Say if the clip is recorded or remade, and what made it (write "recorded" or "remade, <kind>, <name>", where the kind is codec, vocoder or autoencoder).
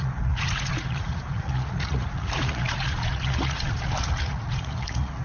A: remade, vocoder, Vocos